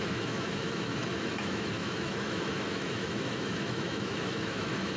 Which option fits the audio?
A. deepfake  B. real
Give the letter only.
A